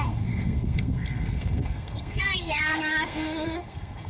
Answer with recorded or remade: remade